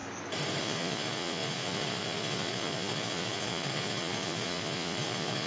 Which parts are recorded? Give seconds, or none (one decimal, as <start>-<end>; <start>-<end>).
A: 0.0-0.6